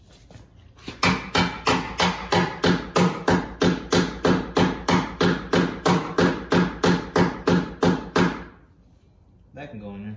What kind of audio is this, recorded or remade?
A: recorded